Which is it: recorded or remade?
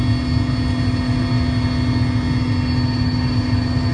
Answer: recorded